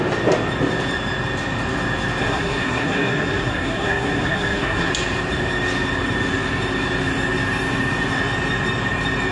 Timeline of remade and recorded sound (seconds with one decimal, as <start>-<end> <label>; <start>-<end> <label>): 0.0-2.2 recorded; 2.2-4.9 remade; 4.9-9.3 recorded